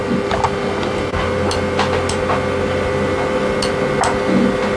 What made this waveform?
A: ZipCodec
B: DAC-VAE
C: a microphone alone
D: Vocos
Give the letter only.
C